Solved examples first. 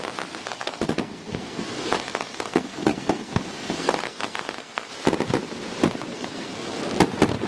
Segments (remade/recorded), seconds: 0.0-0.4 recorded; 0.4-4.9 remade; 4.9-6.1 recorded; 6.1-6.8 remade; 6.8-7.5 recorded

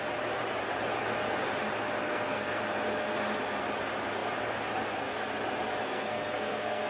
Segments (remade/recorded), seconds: 0.0-2.0 recorded; 2.0-2.6 remade; 2.6-5.8 recorded; 5.8-6.9 remade

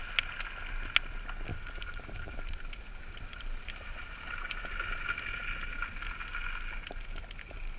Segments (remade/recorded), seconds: 0.0-1.5 recorded; 1.5-4.3 remade; 4.3-7.8 recorded

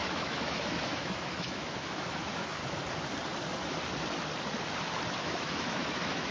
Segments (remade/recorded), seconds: 0.0-2.6 remade; 2.6-5.2 recorded; 5.2-6.3 remade

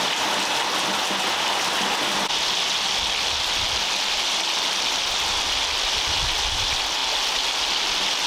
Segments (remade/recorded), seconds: 0.0-8.3 recorded

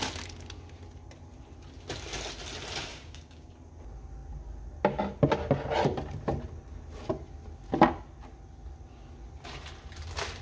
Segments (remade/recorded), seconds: 0.0-2.9 recorded; 2.9-3.5 remade; 3.5-10.4 recorded

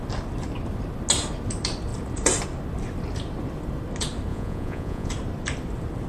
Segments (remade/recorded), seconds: 0.0-4.3 recorded; 4.3-5.1 remade; 5.1-6.1 recorded